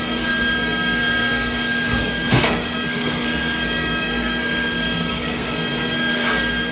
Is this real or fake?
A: fake